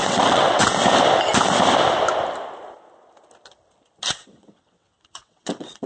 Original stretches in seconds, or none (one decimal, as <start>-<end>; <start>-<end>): 0.6-4.1